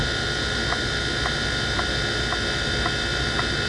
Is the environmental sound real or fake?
real